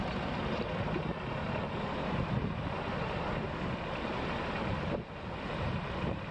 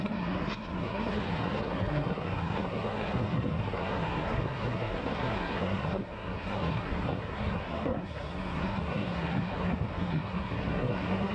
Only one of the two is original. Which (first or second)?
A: first